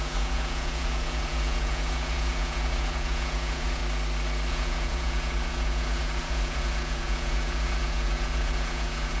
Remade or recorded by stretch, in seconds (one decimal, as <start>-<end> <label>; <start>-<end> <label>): 0.0-3.8 remade; 3.8-4.5 recorded; 4.5-9.2 remade